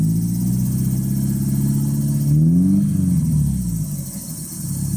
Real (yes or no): yes